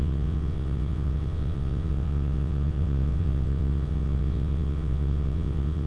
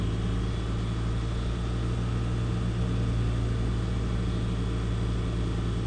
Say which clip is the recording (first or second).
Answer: second